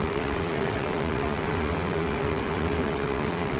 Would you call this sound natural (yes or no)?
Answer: no